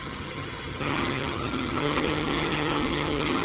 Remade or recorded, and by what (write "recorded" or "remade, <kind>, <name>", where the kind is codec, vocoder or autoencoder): remade, vocoder, HiFi-GAN